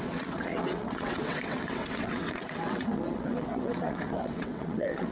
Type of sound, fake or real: fake